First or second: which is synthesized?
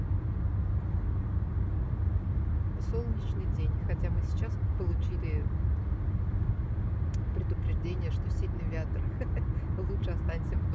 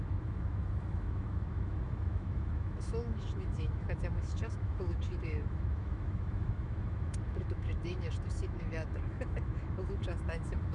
second